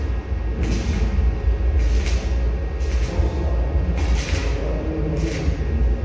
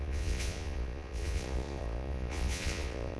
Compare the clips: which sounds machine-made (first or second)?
second